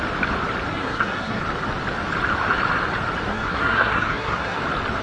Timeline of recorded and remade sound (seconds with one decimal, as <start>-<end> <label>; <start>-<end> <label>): 0.0-0.7 recorded; 0.7-1.4 remade; 1.4-3.3 recorded; 3.3-4.6 remade; 4.6-5.0 recorded